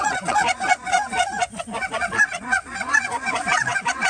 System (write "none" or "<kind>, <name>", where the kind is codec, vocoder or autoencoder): vocoder, Vocos